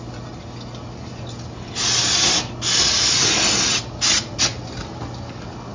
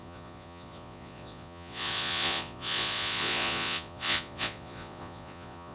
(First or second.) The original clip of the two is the first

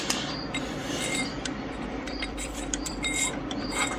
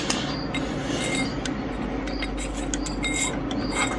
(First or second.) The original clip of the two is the second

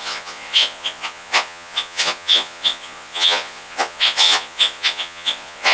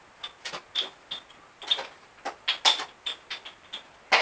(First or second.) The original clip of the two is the second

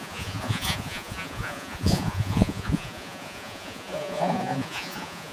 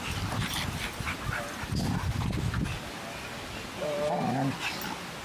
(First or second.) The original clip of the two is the second